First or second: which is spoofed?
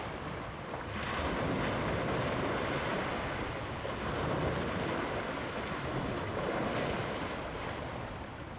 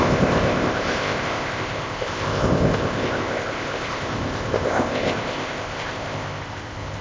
second